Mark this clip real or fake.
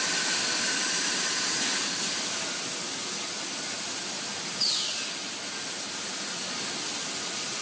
real